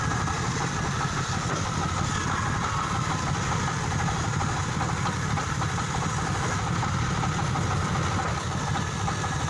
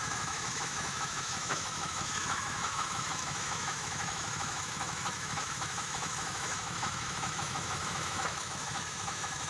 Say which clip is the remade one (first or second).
second